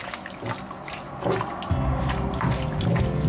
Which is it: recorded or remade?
recorded